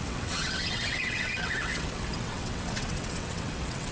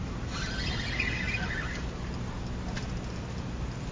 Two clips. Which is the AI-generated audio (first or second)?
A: first